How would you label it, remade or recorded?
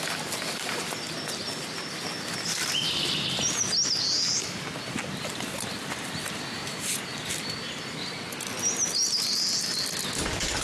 recorded